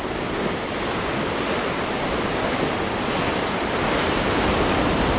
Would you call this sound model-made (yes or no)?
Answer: no